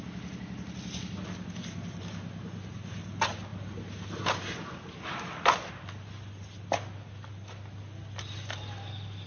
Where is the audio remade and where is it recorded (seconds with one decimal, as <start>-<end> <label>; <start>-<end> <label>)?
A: 0.0-9.3 recorded